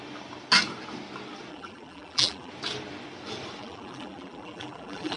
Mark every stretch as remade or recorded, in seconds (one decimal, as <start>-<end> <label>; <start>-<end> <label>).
0.0-1.5 recorded; 1.5-2.5 remade; 2.5-3.6 recorded; 3.6-5.2 remade